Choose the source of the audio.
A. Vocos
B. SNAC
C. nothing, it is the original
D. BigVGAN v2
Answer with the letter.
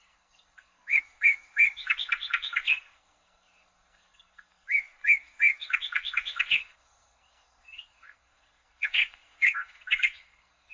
B